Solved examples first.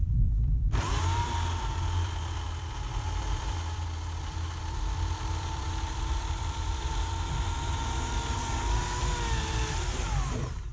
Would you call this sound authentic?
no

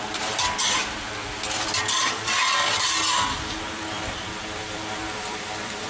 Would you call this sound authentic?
no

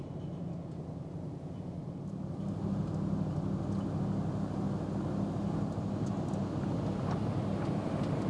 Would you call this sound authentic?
yes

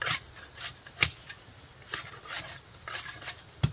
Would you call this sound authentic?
yes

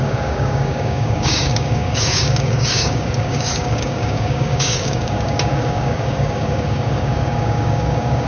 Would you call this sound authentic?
no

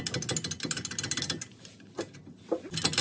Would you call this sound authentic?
yes